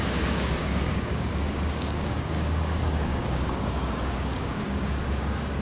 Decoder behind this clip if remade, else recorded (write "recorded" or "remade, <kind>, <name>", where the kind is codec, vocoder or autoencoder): remade, codec, DAC